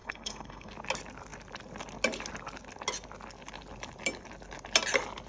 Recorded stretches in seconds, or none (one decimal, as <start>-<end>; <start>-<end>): 0.7-5.3